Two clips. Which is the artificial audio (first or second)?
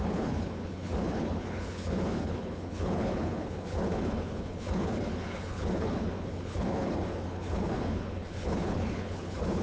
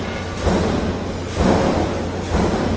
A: first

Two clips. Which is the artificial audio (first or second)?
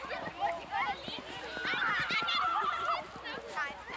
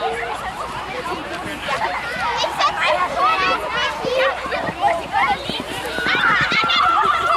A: second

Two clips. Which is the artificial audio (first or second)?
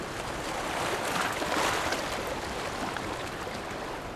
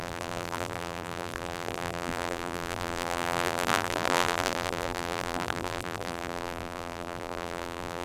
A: second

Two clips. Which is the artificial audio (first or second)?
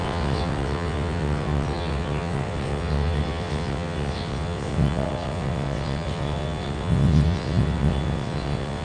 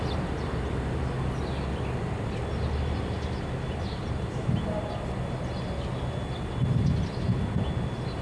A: first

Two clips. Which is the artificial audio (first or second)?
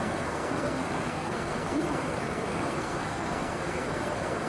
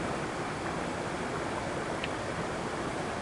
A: first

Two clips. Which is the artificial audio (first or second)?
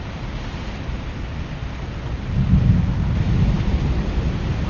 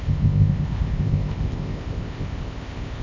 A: second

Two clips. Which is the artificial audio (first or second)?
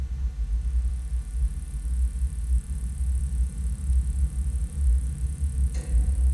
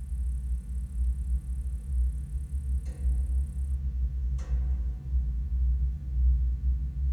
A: first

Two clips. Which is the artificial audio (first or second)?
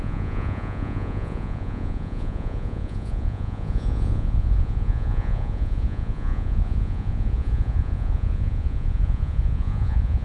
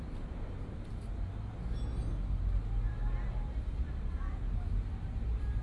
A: first